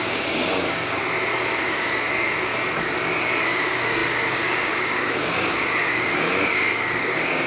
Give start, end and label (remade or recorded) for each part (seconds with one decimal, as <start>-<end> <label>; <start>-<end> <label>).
0.0-1.0 remade; 1.0-1.5 recorded; 1.5-2.5 remade; 2.5-3.4 recorded; 3.4-7.5 remade